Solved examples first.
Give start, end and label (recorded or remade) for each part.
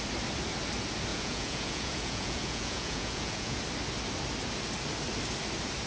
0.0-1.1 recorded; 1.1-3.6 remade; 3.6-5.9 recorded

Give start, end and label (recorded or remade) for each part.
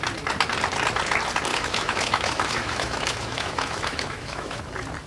0.0-1.5 recorded; 1.5-4.6 remade; 4.6-5.1 recorded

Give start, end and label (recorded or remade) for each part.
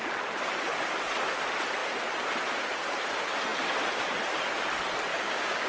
0.0-5.1 recorded; 5.1-5.7 remade